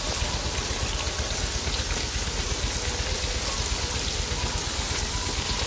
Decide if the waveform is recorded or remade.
recorded